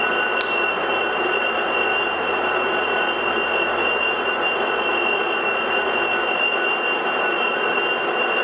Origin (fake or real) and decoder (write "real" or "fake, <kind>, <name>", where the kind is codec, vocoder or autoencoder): real